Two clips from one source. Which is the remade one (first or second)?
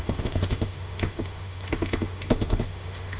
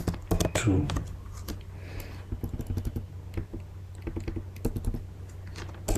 first